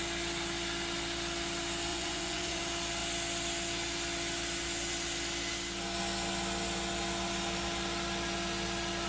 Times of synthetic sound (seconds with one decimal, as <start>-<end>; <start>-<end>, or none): 1.9-2.6